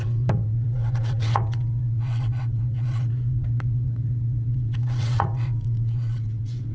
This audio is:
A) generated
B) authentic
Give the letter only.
A